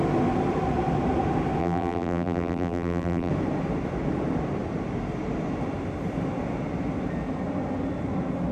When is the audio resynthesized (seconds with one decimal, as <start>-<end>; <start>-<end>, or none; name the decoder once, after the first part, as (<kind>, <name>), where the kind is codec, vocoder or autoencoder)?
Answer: 1.6-3.3 (vocoder, BigVGAN v2)